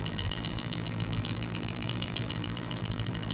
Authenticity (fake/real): fake